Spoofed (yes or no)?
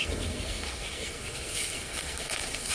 yes